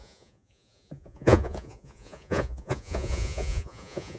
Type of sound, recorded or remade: remade